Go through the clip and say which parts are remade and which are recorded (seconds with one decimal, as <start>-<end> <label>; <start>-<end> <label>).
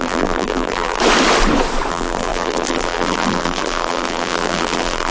0.0-1.0 remade; 1.0-1.9 recorded; 1.9-5.1 remade